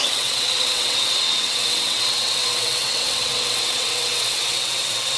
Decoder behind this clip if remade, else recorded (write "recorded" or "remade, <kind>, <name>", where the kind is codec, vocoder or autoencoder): remade, vocoder, WaveNeXt